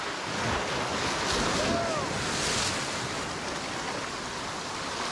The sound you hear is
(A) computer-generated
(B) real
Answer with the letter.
B